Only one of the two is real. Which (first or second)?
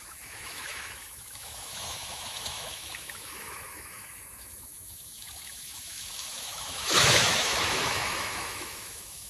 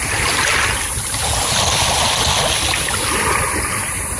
second